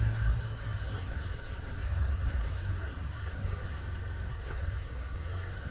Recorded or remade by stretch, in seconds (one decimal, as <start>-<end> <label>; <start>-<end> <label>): 0.0-3.8 remade; 3.8-4.3 recorded; 4.3-5.7 remade